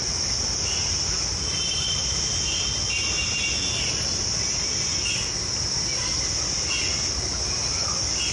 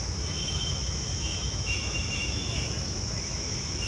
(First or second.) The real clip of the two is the first